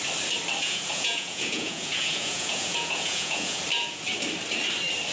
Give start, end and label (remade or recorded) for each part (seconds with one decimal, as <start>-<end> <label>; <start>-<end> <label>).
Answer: 0.0-0.6 recorded; 0.6-3.6 remade; 3.6-5.1 recorded